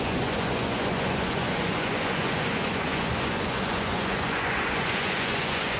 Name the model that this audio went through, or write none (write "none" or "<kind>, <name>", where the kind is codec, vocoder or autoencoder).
vocoder, Vocos